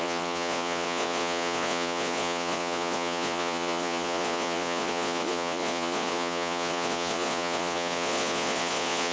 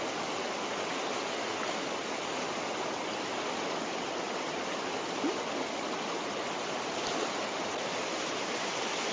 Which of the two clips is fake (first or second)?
first